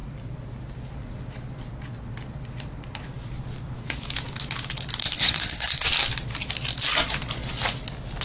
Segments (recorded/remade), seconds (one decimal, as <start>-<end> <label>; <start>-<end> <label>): 0.0-5.0 recorded; 5.0-5.9 remade; 5.9-8.2 recorded